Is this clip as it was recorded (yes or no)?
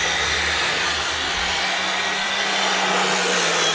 yes